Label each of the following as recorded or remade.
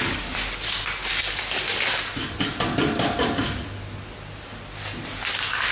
recorded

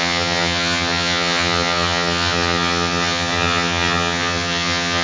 remade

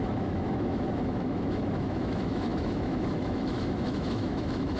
remade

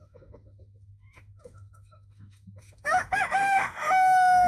remade